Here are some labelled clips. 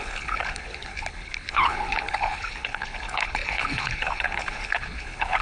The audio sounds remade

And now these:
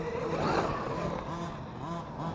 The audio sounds recorded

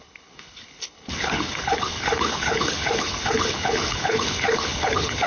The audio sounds remade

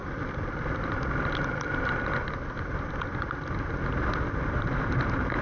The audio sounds recorded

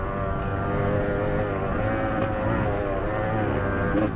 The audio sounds recorded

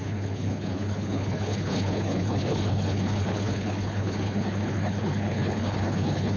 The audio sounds remade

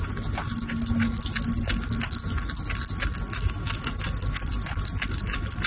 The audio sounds recorded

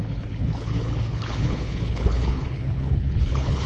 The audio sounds remade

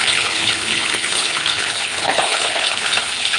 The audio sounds remade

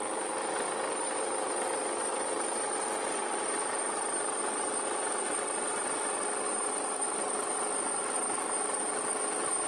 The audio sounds recorded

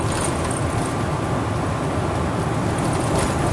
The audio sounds recorded